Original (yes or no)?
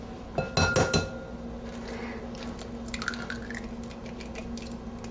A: yes